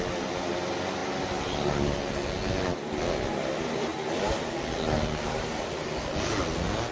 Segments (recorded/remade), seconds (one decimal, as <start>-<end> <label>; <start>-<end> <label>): 0.0-6.9 recorded